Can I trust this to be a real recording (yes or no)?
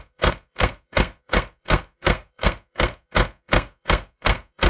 no